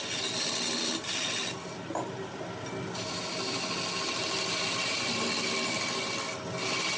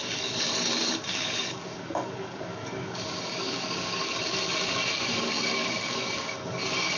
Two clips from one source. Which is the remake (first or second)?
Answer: second